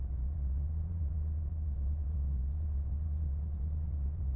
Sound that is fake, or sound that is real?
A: fake